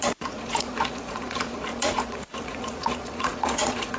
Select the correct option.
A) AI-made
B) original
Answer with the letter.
A